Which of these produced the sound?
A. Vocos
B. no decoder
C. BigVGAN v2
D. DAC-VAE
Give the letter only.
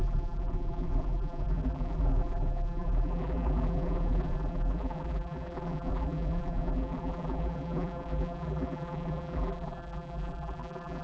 C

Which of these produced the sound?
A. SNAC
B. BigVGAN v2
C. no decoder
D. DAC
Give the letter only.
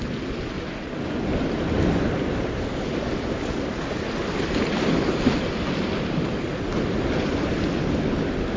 C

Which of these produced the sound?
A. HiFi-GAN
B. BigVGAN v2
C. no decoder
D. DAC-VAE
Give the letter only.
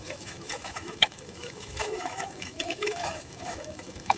D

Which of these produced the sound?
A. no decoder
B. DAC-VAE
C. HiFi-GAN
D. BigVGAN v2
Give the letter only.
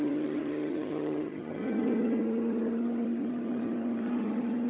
C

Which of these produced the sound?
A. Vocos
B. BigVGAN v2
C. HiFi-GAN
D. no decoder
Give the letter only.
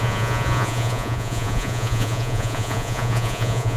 A